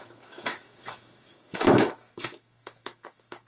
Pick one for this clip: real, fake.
fake